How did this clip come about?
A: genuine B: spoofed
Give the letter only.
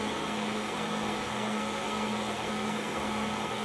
B